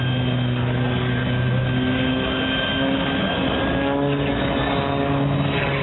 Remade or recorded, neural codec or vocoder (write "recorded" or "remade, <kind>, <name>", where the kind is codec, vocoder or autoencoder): recorded